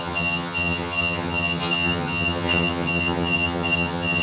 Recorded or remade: remade